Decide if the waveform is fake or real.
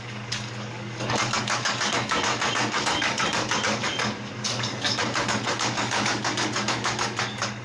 fake